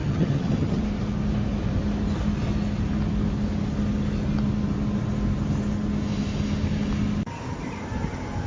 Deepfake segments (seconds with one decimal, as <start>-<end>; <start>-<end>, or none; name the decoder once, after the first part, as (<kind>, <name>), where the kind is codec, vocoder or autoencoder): 0.0-0.8 (vocoder, HiFi-GAN)